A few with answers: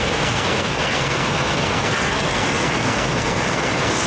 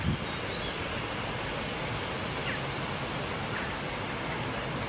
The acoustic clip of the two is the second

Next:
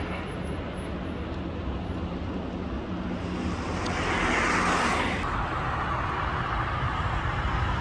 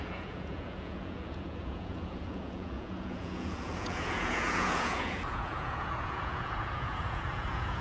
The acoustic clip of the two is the first